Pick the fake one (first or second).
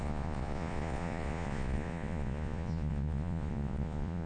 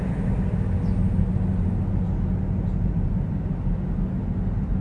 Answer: first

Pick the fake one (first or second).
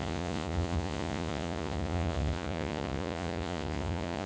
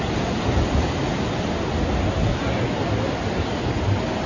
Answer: first